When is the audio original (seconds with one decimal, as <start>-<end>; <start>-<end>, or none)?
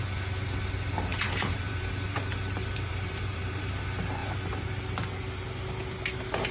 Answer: 0.0-1.1; 3.8-4.2; 4.8-6.5